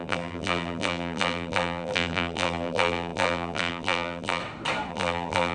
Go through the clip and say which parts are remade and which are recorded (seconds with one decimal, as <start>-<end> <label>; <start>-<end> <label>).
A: 0.0-4.4 remade; 4.4-4.9 recorded; 4.9-5.5 remade